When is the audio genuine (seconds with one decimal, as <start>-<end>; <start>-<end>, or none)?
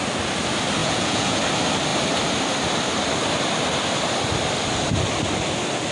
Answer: 0.0-0.8; 1.4-5.9